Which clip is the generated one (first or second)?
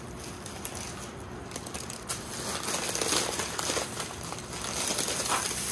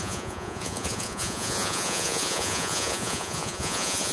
second